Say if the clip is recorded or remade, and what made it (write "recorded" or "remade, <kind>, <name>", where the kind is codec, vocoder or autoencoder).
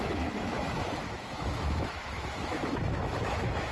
remade, autoencoder, DAC-VAE